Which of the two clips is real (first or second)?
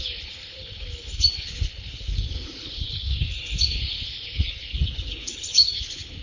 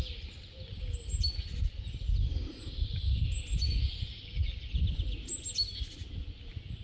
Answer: second